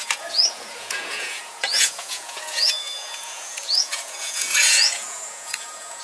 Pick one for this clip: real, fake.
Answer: fake